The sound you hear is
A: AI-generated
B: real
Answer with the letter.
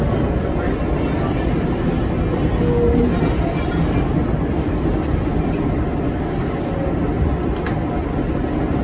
B